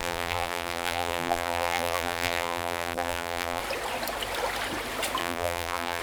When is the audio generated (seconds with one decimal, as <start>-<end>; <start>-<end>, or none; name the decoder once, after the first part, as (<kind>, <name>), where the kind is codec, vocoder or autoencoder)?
0.0-3.6 (vocoder, BigVGAN v2); 5.2-6.0